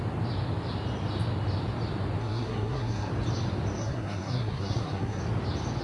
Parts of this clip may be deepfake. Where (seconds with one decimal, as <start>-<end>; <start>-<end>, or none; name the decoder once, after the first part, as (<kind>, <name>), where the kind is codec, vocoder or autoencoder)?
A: 2.2-3.1 (codec, SNAC); 3.8-5.2